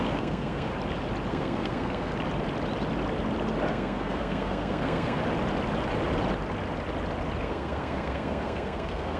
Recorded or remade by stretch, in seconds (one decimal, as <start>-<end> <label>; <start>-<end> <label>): 0.0-0.7 remade; 0.7-1.3 recorded; 1.3-2.1 remade; 2.1-3.7 recorded; 3.7-5.2 remade; 5.2-7.4 recorded; 7.4-9.2 remade